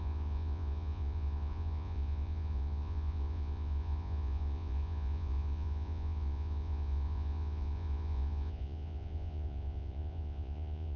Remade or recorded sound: remade